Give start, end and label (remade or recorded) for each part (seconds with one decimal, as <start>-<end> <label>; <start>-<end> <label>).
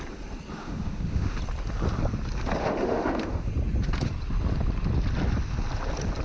0.0-0.6 recorded; 0.6-1.4 remade; 1.4-2.6 recorded; 2.6-3.5 remade; 3.5-6.2 recorded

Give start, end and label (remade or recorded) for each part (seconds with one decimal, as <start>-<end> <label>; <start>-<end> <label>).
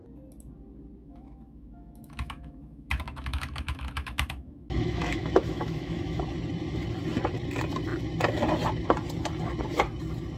0.0-1.0 recorded; 1.0-6.2 remade; 6.2-10.4 recorded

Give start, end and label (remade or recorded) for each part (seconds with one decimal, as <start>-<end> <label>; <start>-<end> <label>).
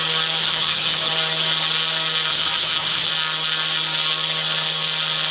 0.0-0.4 recorded; 0.4-1.1 remade; 1.1-2.3 recorded; 2.3-3.1 remade; 3.1-5.3 recorded